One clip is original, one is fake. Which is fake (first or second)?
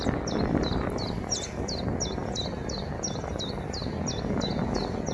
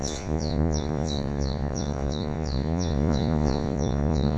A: second